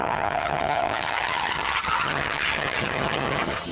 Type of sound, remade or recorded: remade